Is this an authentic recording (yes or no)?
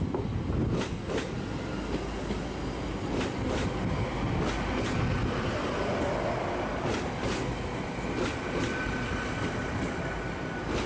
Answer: yes